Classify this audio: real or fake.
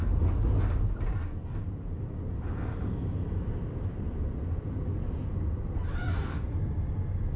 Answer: real